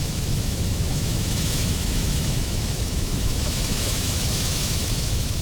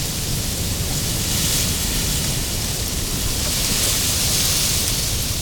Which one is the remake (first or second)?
first